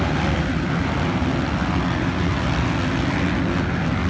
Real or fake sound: real